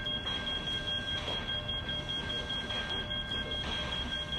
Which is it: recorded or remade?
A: recorded